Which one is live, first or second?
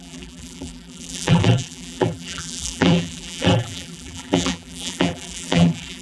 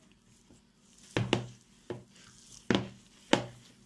second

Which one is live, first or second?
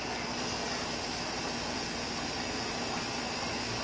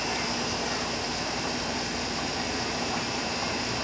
first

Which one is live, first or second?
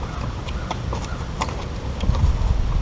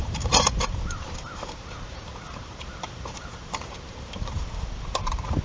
first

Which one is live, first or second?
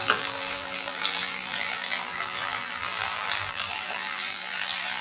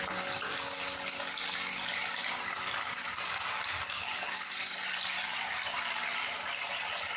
second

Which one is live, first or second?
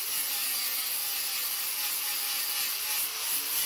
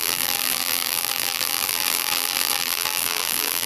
first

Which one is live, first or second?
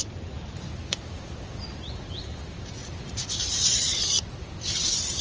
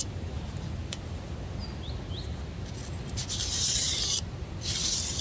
second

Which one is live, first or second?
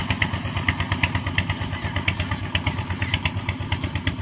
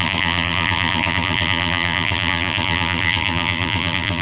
first